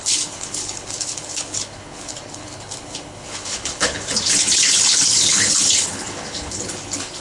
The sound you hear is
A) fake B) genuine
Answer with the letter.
A